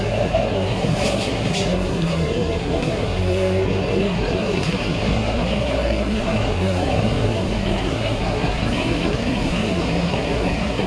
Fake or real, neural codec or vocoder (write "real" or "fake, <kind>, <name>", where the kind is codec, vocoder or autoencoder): fake, codec, SNAC